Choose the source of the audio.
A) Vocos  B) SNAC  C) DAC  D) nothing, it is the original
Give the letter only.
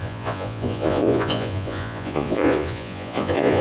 A